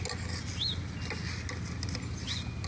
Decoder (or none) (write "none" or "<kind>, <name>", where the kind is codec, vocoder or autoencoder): none